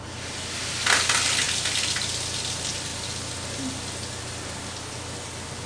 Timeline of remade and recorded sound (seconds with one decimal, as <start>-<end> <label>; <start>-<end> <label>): 0.0-5.7 recorded